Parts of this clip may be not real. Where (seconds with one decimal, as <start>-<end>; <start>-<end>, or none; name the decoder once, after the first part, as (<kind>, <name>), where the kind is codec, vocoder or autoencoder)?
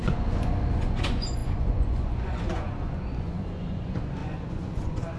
0.0-5.2 (vocoder, Vocos)